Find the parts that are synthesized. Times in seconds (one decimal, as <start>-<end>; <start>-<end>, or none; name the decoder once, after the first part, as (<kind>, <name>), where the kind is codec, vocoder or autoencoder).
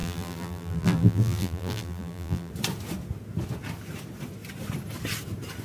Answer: 0.0-2.5 (vocoder, BigVGAN v2)